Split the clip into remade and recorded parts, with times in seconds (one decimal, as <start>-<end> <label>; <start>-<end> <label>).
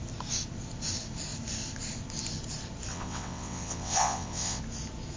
0.0-2.9 recorded; 2.9-4.6 remade; 4.6-5.2 recorded